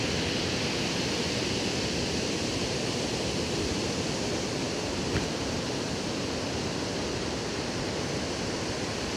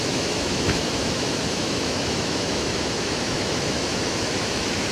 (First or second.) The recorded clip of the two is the first